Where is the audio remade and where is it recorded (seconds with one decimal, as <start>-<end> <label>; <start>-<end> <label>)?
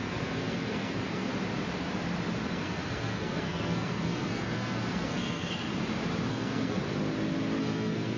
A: 0.0-1.3 remade; 1.3-2.5 recorded; 2.5-5.7 remade; 5.7-6.3 recorded; 6.3-6.8 remade; 6.8-7.6 recorded; 7.6-8.2 remade